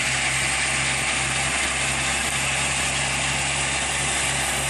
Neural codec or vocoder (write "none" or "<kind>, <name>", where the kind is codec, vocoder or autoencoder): none